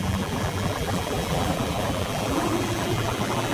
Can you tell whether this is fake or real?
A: fake